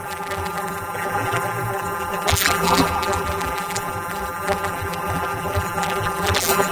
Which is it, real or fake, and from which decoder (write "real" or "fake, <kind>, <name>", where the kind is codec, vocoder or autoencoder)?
fake, vocoder, BigVGAN v2